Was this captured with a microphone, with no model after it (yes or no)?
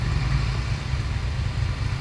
yes